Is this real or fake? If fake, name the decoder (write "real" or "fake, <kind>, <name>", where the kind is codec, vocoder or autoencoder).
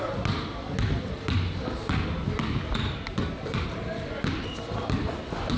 real